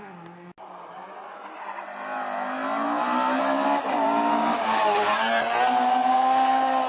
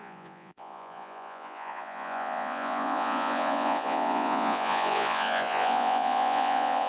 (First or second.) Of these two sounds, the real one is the first